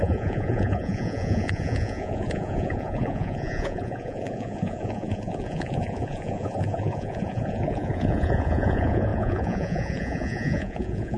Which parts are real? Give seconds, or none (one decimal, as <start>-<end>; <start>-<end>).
none